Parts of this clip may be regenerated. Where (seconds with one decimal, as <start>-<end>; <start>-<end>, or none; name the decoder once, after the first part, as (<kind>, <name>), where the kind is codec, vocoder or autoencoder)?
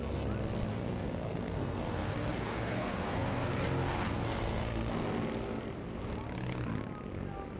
0.7-4.9 (codec, SNAC)